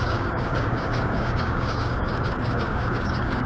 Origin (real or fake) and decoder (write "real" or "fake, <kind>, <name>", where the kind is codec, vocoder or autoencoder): fake, codec, DAC